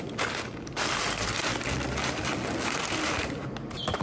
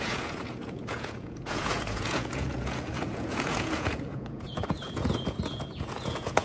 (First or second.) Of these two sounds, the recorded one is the first